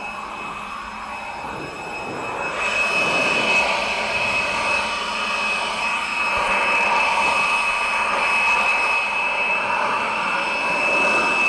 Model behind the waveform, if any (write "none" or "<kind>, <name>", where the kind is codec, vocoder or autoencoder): none